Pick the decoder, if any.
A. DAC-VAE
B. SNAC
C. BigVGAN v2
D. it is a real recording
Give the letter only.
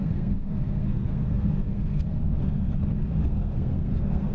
B